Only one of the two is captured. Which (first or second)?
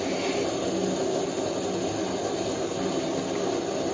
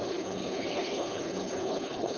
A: first